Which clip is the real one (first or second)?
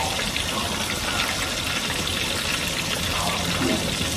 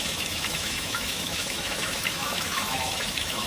first